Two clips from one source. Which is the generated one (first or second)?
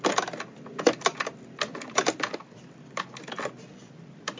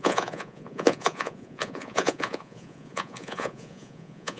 second